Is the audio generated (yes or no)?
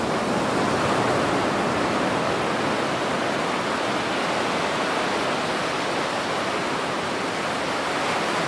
no